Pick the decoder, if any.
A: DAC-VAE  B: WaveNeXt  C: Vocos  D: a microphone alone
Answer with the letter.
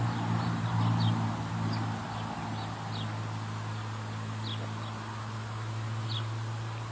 D